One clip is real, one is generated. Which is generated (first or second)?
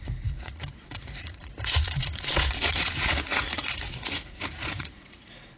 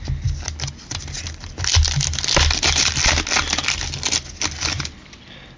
first